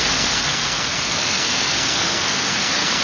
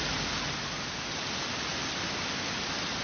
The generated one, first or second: first